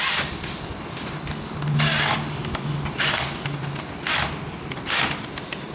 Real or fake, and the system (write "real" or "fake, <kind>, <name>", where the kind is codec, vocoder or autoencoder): real